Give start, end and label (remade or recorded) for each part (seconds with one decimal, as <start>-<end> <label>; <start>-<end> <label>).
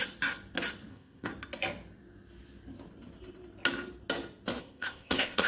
0.0-0.9 recorded; 0.9-1.3 remade; 1.3-4.6 recorded; 4.6-5.5 remade